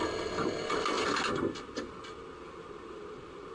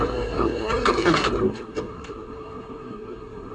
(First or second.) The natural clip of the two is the first